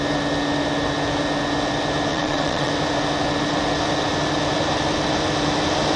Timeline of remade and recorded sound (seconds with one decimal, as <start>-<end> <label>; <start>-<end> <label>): 0.0-2.1 recorded; 2.1-2.7 remade; 2.7-6.0 recorded

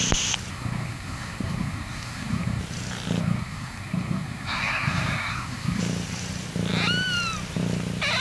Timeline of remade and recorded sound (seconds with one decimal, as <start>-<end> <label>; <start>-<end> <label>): 0.0-0.5 recorded; 0.5-2.6 remade; 2.6-3.2 recorded; 3.2-5.8 remade; 5.8-8.2 recorded

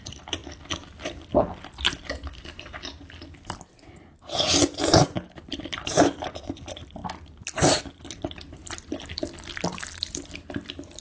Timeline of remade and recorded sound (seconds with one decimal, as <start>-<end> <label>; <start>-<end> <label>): 0.0-0.4 remade; 0.4-5.6 recorded; 5.6-7.0 remade; 7.0-9.0 recorded; 9.0-11.0 remade

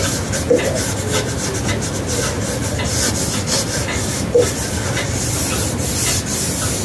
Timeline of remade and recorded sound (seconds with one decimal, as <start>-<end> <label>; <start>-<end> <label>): 0.0-6.8 recorded

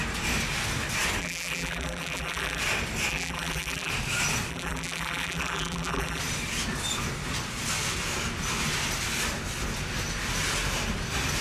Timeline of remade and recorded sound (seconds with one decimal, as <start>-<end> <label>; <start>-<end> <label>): 0.0-1.2 recorded; 1.2-2.6 remade; 2.6-3.1 recorded; 3.1-3.9 remade; 3.9-4.5 recorded; 4.5-6.2 remade; 6.2-11.4 recorded